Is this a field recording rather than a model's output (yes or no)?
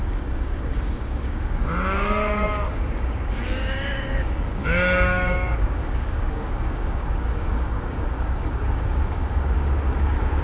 no